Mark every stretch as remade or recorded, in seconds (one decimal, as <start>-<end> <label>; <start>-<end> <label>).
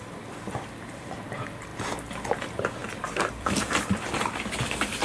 0.0-1.7 remade; 1.7-2.4 recorded; 2.4-2.8 remade; 2.8-3.3 recorded; 3.3-5.0 remade